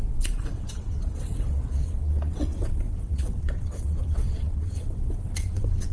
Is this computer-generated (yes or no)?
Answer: yes